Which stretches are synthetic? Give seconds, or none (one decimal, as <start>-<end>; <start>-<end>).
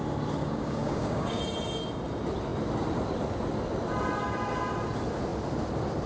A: 0.4-1.4